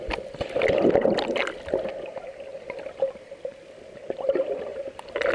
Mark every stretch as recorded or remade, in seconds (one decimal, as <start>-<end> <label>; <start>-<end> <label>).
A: 0.0-5.3 recorded